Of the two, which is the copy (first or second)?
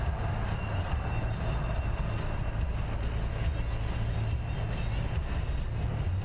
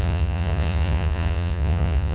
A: second